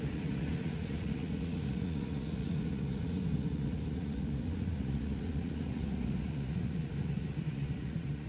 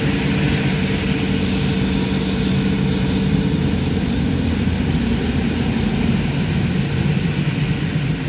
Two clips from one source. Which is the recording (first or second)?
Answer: second